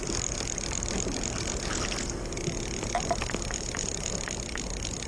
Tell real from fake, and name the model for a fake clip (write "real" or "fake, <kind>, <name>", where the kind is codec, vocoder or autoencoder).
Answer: real